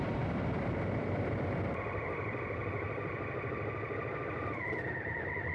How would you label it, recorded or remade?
remade